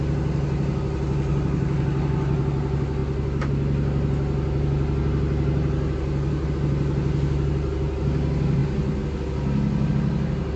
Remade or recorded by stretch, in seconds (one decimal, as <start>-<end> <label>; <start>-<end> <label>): 0.0-10.6 recorded